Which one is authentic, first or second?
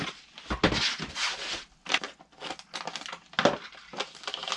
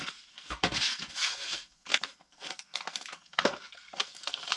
first